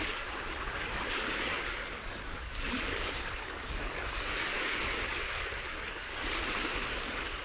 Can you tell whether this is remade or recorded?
remade